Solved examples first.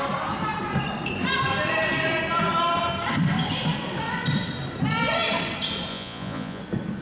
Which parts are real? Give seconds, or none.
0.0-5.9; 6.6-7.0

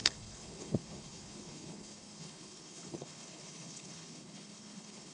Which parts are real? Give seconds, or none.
none

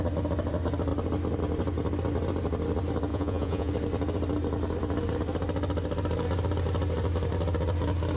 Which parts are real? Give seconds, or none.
0.0-3.1; 3.7-8.2